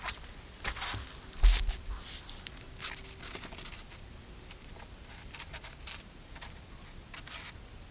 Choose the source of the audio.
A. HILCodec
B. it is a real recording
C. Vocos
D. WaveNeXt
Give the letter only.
B